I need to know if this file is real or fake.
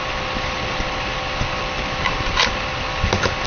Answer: real